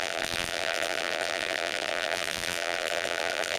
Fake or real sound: fake